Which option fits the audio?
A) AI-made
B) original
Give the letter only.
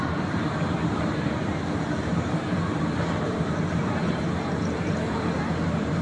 A